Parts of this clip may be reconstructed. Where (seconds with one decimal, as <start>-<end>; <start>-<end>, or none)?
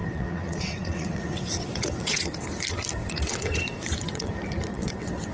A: 0.0-2.4; 3.0-4.3; 4.7-5.3